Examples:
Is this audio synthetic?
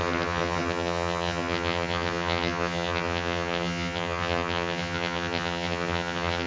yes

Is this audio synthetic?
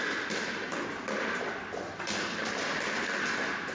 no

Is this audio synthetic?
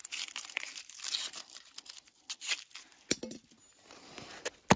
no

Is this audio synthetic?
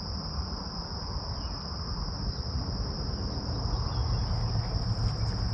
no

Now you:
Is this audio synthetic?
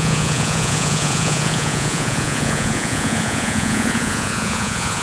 yes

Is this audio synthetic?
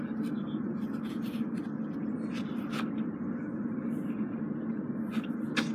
no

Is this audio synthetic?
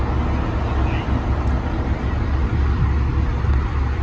no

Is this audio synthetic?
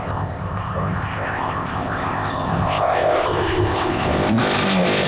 yes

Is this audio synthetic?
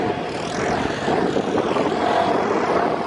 no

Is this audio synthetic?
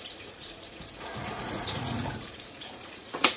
yes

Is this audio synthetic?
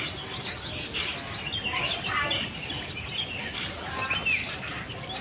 no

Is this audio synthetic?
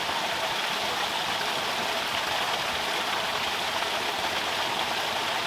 no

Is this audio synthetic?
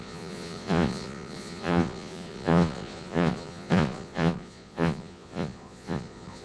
yes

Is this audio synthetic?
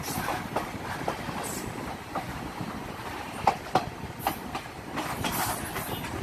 no